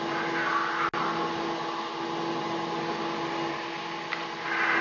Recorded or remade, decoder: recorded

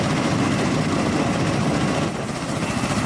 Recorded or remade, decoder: recorded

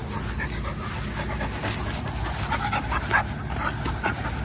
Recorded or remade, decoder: recorded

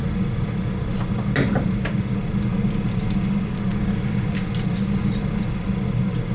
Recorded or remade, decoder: recorded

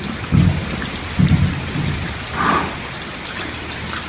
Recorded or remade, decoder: recorded